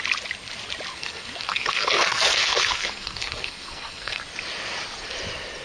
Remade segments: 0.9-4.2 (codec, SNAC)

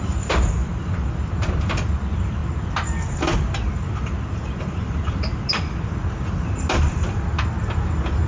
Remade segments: none

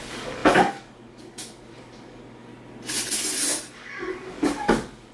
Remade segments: 0.0-2.5 (codec, DAC); 3.7-5.1

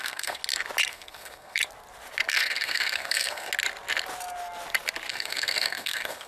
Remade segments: 0.0-0.4 (codec, SNAC); 0.9-1.6; 2.3-3.5; 5.1-6.3

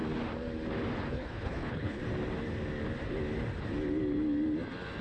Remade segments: 1.1-2.0 (codec, HILCodec)